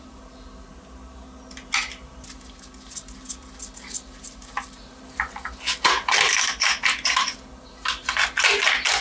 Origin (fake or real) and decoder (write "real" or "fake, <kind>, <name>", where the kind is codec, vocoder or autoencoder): real